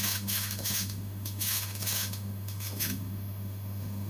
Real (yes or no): no